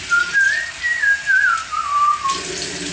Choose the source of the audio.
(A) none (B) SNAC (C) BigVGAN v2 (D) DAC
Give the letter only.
A